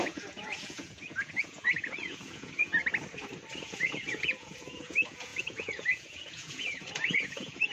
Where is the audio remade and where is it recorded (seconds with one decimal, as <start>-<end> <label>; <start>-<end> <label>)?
0.0-2.8 remade; 2.8-3.6 recorded; 3.6-7.7 remade